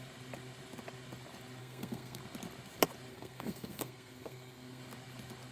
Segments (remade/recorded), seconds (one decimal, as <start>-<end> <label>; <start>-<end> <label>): 0.0-1.6 recorded; 1.6-2.2 remade; 2.2-3.1 recorded; 3.1-4.8 remade; 4.8-5.5 recorded